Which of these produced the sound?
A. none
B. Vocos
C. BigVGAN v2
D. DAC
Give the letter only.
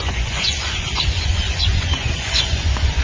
B